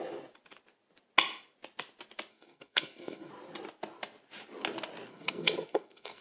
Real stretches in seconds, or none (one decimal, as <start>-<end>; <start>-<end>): 0.0-2.3; 3.3-5.1